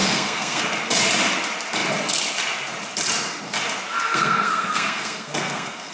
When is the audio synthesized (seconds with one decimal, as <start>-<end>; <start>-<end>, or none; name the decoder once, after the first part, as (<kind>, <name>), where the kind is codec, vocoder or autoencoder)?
0.0-0.6 (codec, SNAC); 3.9-5.9